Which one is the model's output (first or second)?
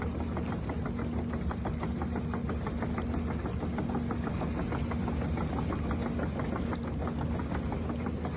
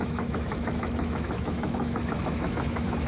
second